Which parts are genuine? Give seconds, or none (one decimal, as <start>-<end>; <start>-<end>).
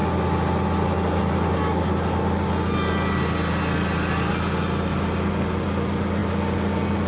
0.0-7.1